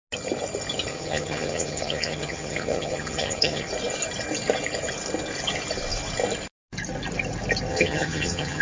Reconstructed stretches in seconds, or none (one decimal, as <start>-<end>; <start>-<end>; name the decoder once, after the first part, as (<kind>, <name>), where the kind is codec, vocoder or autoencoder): 0.9-3.7 (vocoder, HiFi-GAN); 7.7-8.6